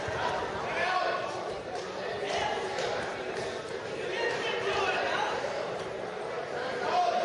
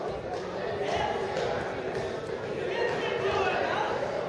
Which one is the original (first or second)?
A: second